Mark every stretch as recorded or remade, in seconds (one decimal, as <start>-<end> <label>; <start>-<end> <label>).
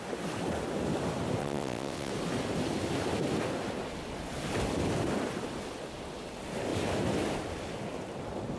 0.0-1.4 recorded; 1.4-2.1 remade; 2.1-8.6 recorded